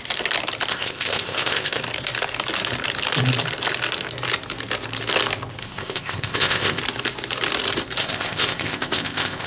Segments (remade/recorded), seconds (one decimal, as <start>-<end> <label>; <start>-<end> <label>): 0.0-0.7 recorded; 0.7-1.8 remade; 1.8-5.6 recorded; 5.6-6.8 remade; 6.8-8.0 recorded; 8.0-9.5 remade